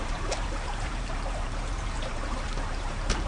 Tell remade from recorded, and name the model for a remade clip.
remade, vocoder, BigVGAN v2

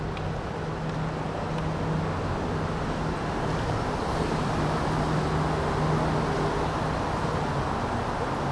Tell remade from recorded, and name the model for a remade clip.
recorded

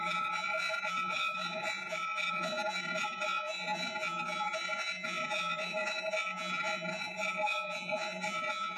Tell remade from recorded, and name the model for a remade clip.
remade, vocoder, Vocos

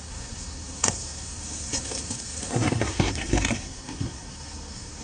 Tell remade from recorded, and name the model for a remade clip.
remade, codec, SNAC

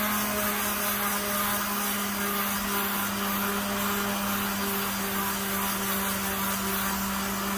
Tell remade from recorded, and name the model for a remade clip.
recorded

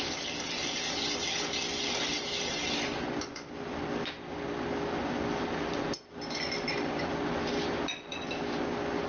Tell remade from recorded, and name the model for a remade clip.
recorded